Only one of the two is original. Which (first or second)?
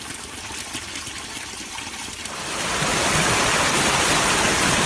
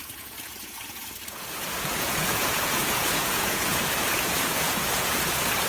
first